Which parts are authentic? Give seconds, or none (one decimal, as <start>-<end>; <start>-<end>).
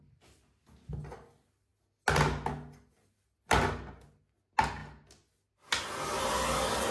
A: 0.0-6.9